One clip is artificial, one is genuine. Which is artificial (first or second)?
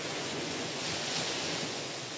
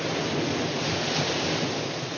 first